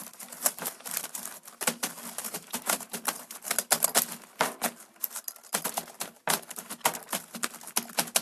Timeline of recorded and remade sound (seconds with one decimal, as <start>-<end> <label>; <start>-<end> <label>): 0.0-2.2 recorded; 2.2-3.4 remade; 3.4-8.2 recorded